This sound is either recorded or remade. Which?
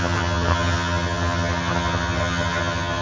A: remade